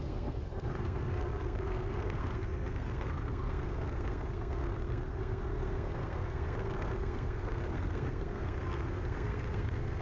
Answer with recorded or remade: remade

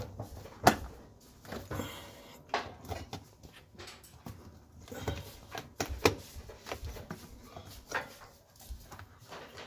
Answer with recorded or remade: recorded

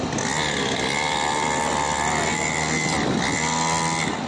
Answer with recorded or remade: recorded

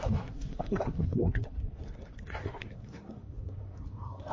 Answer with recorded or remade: remade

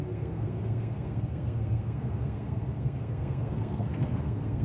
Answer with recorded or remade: remade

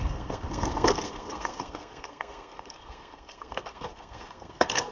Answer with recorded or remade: remade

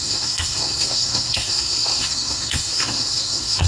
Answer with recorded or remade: remade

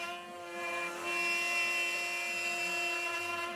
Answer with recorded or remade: recorded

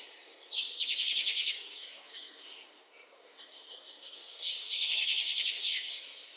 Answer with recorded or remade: remade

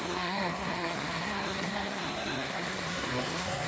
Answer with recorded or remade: remade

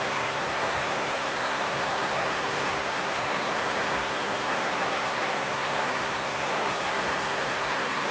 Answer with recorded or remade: remade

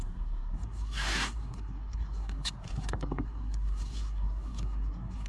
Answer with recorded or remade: remade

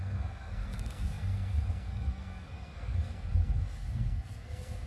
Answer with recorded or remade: remade